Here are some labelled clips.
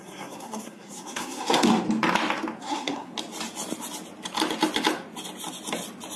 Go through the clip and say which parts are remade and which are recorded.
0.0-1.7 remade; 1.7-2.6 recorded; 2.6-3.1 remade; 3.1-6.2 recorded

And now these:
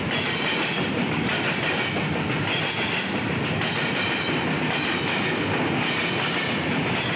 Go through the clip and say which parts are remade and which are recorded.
0.0-7.2 recorded

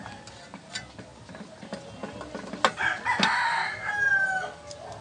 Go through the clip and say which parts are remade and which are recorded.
0.0-5.0 recorded